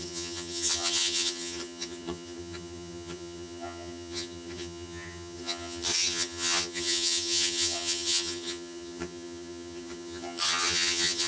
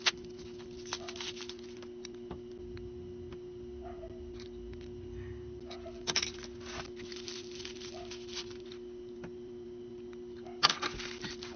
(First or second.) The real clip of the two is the second